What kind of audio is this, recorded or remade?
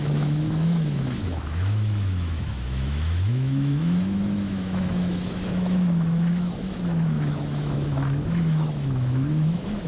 remade